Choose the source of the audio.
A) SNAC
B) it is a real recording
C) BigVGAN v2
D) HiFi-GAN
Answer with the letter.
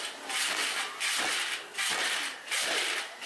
B